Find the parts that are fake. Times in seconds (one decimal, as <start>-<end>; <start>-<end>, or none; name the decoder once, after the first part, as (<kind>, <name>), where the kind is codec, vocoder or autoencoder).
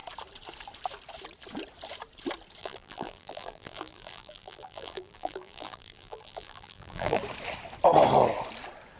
2.6-7.2 (vocoder, BigVGAN v2)